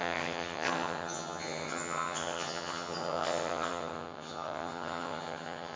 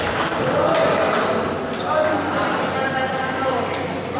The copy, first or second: first